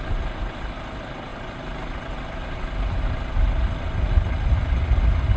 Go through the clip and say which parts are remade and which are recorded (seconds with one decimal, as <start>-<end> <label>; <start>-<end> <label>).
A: 0.0-5.4 recorded